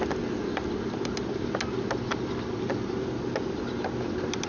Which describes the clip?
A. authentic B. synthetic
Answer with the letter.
A